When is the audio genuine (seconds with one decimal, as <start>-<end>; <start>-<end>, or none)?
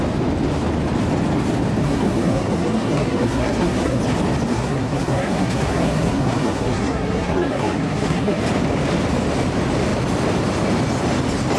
0.0-1.8; 4.0-4.5; 8.4-11.6